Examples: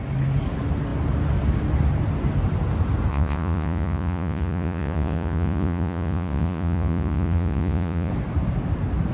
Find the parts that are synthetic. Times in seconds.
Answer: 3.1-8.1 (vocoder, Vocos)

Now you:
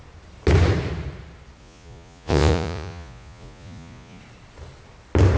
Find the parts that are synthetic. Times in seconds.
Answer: 1.6-4.2 (vocoder, Vocos)

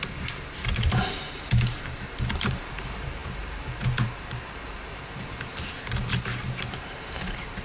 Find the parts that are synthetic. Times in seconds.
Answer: 0.0-7.6 (vocoder, BigVGAN v2)

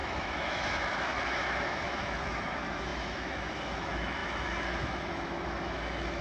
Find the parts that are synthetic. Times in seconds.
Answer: 0.0-6.2 (autoencoder, DAC-VAE)